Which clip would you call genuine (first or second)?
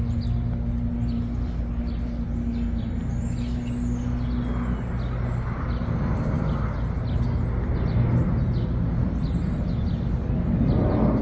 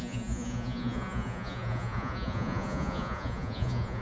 first